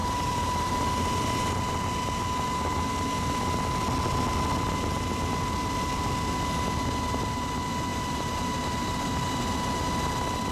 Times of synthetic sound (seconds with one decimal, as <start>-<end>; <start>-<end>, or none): 0.0-0.7; 7.9-8.4